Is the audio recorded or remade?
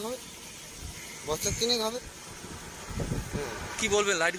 recorded